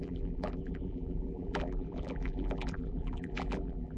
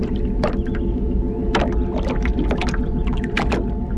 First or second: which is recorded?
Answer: second